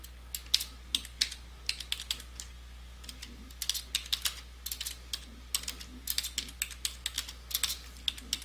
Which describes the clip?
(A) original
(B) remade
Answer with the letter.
A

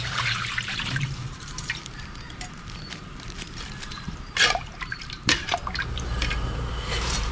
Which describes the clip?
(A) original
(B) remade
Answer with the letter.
B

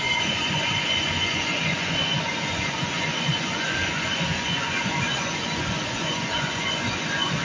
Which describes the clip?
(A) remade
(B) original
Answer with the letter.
A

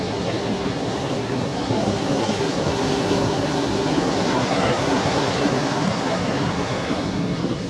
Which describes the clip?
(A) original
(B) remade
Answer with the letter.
B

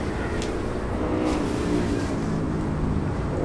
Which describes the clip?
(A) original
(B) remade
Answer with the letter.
A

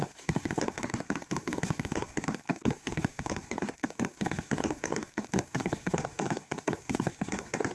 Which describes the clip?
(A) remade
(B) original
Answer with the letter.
A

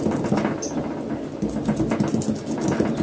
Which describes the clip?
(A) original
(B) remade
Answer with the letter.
A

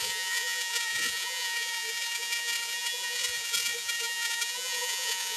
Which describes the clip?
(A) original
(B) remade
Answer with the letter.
B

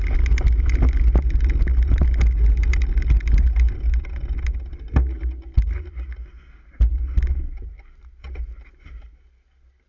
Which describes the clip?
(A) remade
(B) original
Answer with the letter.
B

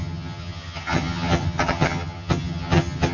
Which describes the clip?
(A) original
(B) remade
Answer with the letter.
B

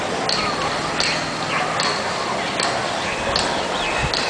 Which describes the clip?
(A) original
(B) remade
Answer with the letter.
A